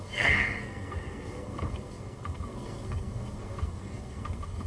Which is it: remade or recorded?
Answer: remade